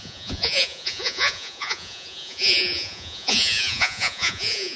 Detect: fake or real fake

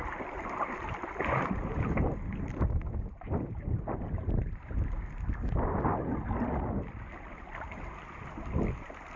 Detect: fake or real real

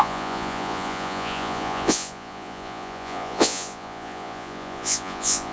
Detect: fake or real fake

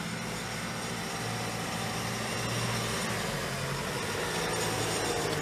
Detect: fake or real real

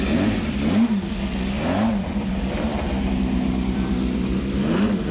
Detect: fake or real real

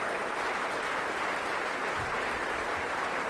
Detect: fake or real real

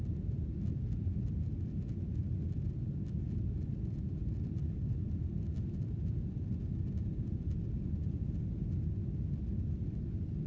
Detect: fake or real real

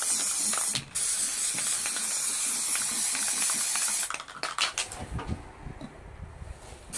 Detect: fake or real real